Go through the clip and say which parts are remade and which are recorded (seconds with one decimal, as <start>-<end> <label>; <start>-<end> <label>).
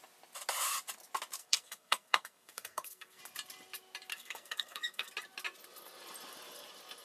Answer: 0.0-1.4 recorded; 1.4-3.2 remade; 3.2-4.1 recorded; 4.1-5.1 remade; 5.1-7.0 recorded